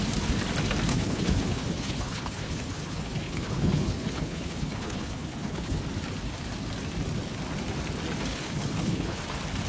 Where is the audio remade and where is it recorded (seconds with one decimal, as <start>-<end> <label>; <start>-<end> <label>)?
0.0-0.9 recorded; 0.9-5.8 remade; 5.8-8.3 recorded; 8.3-9.2 remade; 9.2-9.7 recorded